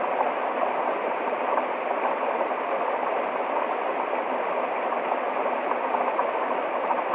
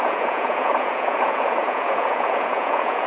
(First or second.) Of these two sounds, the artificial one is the second